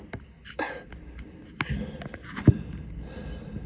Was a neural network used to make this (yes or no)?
no